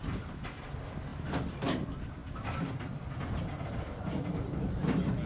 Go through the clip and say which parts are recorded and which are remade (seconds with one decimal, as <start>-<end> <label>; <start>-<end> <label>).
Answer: 0.0-5.3 recorded